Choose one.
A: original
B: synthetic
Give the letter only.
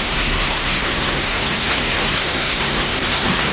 B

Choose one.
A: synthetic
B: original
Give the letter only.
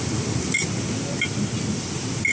B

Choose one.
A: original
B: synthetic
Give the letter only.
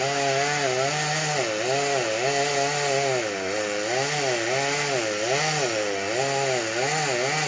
A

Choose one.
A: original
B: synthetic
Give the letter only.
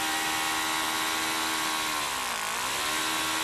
A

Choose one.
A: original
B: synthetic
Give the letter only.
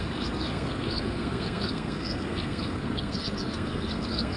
B